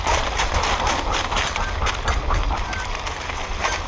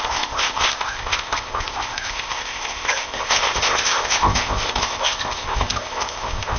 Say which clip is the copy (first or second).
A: second